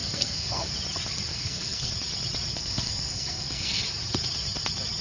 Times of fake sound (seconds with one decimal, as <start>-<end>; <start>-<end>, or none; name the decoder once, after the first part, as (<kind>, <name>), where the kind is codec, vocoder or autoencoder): 0.0-0.7 (codec, SNAC); 1.3-1.9; 2.5-3.8

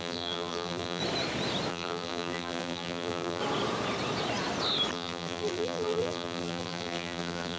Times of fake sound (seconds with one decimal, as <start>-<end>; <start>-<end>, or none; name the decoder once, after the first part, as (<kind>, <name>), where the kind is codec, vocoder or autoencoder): 0.0-1.0 (vocoder, BigVGAN v2); 1.7-3.4; 4.9-7.6

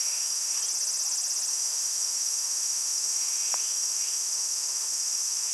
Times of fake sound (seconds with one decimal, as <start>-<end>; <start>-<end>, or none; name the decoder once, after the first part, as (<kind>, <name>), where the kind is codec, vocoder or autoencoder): 0.0-0.6 (autoencoder, DAC-VAE); 1.5-5.5

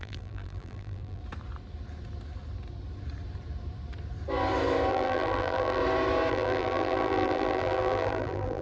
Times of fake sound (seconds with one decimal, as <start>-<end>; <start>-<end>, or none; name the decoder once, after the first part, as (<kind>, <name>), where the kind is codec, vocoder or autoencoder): 0.0-1.2 (vocoder, BigVGAN v2); 4.9-5.8; 6.3-8.6

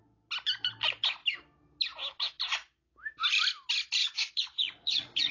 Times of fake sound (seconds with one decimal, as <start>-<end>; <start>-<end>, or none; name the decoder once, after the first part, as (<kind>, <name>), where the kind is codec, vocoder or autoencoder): 4.0-5.3 (vocoder, Vocos)